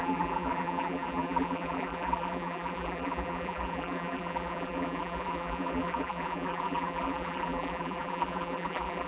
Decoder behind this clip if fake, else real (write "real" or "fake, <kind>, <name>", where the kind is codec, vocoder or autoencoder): fake, vocoder, BigVGAN v2